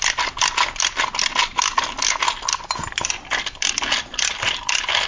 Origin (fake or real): real